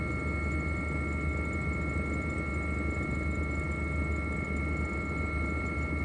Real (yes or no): yes